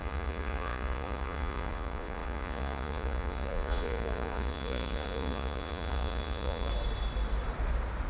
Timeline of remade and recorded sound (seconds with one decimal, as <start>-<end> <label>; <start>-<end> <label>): 0.0-6.7 remade; 6.7-8.1 recorded